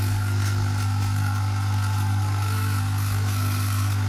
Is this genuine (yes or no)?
no